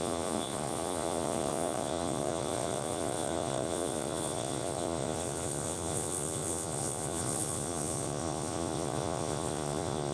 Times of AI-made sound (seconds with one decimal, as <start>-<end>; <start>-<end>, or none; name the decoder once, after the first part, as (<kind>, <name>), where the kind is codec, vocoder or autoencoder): 0.0-10.1 (vocoder, Vocos)